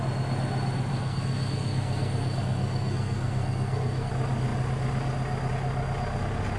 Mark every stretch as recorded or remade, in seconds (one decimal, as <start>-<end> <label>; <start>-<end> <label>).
0.0-0.9 recorded; 0.9-4.1 remade; 4.1-6.6 recorded